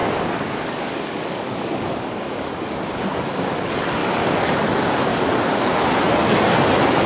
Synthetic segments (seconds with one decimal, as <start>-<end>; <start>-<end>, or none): 0.0-3.5; 4.0-4.5; 5.1-5.8